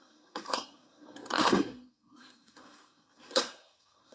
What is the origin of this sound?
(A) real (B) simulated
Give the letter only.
B